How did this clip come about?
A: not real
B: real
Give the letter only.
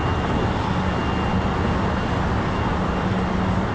B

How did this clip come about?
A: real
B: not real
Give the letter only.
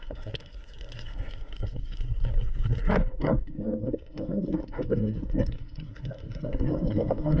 B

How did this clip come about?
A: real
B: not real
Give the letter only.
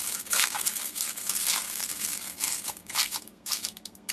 B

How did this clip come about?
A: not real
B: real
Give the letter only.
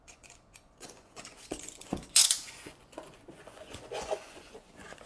A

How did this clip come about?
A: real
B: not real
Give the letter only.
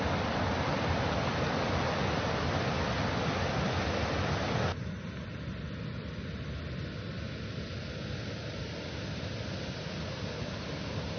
A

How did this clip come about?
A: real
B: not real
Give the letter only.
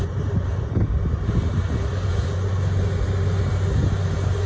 A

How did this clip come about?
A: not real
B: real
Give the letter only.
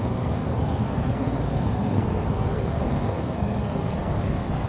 A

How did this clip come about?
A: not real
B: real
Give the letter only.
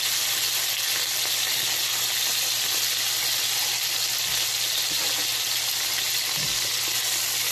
B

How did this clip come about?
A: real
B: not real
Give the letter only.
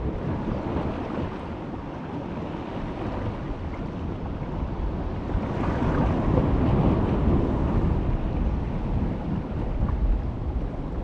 A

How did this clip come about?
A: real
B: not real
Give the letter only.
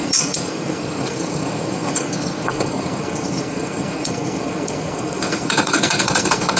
B